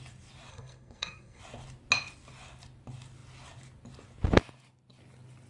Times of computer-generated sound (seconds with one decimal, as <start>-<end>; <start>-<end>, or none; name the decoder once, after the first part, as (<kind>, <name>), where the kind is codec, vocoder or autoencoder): 0.5-1.4 (codec, SNAC)